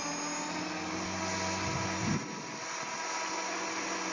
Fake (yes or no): no